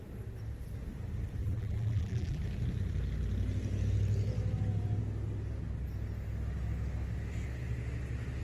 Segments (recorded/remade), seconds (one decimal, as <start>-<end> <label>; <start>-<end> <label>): 0.0-1.4 recorded; 1.4-2.4 remade; 2.4-8.4 recorded